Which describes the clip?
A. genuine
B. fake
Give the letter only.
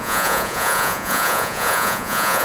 B